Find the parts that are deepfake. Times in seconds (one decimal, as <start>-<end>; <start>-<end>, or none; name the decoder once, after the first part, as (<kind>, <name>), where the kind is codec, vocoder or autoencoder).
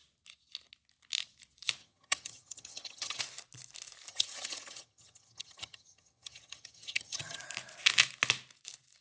1.8-3.2 (vocoder, HiFi-GAN); 4.1-7.4